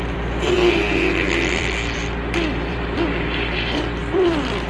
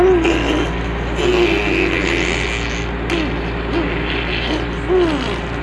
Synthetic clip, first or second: first